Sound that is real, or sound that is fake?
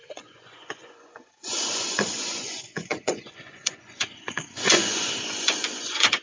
fake